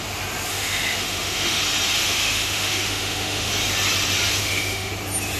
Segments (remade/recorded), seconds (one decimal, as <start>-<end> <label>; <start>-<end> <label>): 0.0-0.5 recorded; 0.5-1.6 remade; 1.6-2.0 recorded; 2.0-3.5 remade; 3.5-4.4 recorded; 4.4-4.9 remade; 4.9-5.4 recorded